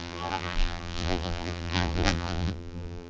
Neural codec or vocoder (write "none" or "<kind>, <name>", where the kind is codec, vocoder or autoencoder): vocoder, BigVGAN v2